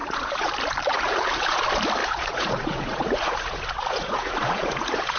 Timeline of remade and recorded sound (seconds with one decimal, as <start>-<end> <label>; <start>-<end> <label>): 0.0-0.5 remade; 0.5-0.9 recorded; 0.9-1.6 remade; 1.6-2.0 recorded; 2.0-5.2 remade